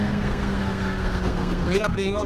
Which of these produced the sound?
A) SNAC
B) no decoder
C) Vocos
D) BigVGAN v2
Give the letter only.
A